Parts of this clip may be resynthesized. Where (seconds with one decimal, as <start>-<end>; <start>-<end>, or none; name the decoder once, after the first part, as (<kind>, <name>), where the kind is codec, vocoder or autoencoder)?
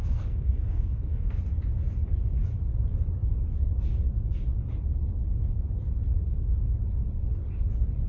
0.0-1.4 (codec, SNAC)